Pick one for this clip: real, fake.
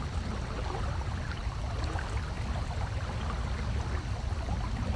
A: real